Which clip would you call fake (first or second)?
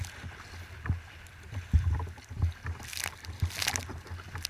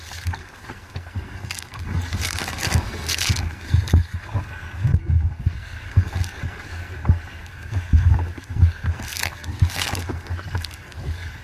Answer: second